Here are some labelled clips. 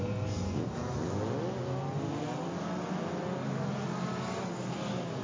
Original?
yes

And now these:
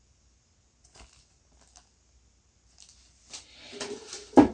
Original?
yes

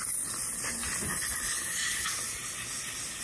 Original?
yes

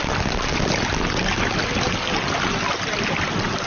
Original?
yes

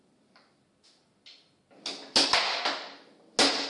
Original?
yes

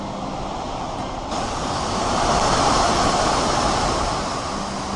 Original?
yes